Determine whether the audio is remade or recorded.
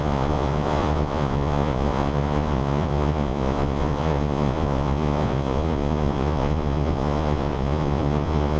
remade